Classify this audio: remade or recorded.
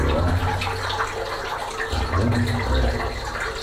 recorded